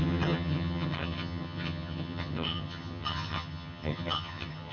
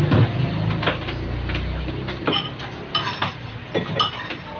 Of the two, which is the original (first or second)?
second